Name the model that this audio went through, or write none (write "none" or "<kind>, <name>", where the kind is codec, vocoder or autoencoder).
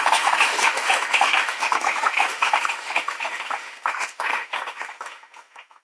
autoencoder, DAC-VAE